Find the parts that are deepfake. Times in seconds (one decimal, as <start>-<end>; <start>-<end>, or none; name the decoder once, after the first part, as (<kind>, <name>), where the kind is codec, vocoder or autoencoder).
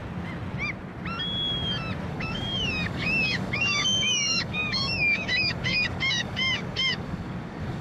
2.1-7.8 (codec, DAC)